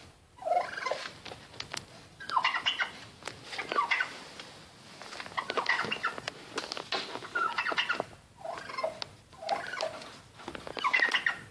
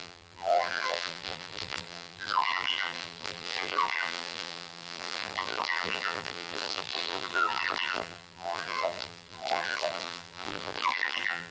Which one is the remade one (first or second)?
second